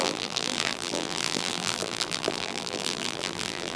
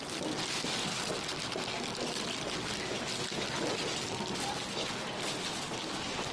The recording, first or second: second